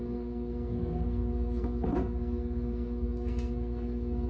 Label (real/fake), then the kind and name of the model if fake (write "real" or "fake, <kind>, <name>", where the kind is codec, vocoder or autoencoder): fake, codec, SNAC